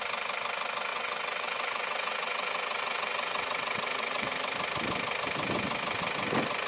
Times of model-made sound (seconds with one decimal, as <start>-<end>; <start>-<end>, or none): 0.9-4.3